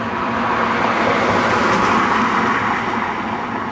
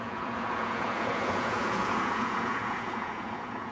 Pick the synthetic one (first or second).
second